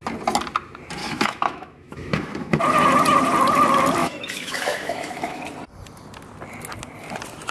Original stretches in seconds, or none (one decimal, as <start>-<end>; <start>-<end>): 0.0-1.0; 2.6-4.0; 5.4-7.5